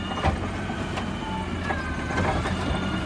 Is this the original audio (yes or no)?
yes